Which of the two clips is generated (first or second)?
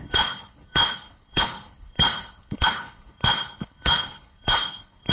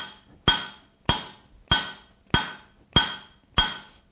first